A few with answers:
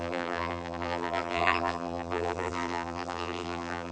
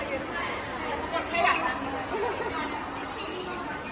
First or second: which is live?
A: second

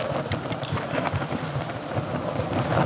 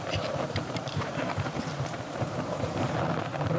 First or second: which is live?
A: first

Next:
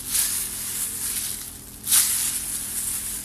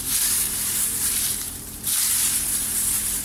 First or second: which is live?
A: first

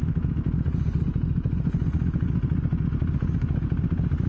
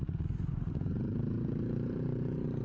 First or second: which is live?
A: first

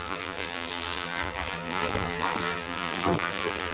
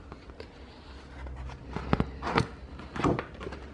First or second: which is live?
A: second